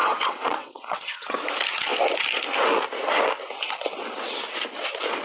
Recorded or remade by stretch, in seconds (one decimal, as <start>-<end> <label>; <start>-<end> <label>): 0.0-1.4 remade; 1.4-5.2 recorded